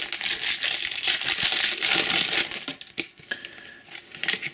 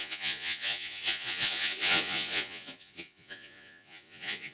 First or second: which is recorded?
first